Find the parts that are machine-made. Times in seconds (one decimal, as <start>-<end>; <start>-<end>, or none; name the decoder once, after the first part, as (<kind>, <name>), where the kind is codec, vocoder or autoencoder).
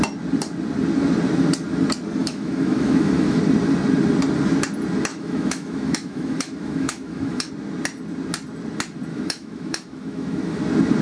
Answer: 2.2-3.4 (autoencoder, DAC-VAE); 5.1-7.5; 9.1-10.6